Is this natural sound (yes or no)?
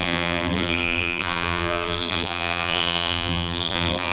no